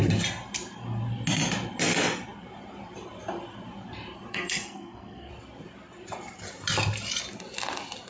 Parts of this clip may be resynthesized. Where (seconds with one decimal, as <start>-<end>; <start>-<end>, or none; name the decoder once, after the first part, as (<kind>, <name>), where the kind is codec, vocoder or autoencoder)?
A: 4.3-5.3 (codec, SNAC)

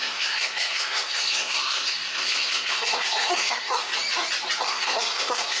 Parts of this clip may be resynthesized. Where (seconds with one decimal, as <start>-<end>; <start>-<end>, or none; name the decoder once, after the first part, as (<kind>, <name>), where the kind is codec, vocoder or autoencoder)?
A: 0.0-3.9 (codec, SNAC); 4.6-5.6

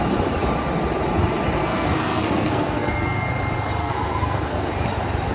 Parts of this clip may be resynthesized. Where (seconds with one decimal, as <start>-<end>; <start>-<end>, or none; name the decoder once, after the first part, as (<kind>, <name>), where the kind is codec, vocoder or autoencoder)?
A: 1.6-3.3 (codec, SNAC); 3.8-4.7

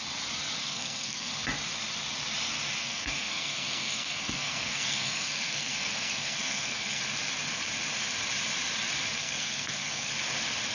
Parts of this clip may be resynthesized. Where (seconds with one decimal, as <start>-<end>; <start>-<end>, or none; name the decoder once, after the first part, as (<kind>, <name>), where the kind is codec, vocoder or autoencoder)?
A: 0.6-1.3 (codec, SNAC); 2.8-7.0; 9.2-10.1

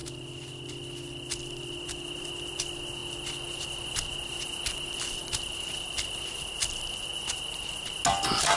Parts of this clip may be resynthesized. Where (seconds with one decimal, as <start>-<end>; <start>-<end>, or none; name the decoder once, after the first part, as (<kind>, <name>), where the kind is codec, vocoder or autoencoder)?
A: none